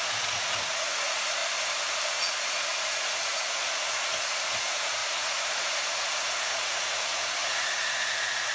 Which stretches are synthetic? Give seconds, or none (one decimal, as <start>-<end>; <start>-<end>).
0.0-1.4; 2.0-8.5